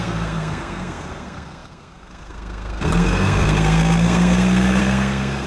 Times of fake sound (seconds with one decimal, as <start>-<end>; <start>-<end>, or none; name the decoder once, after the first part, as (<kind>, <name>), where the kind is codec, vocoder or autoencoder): 0.0-5.5 (codec, SNAC)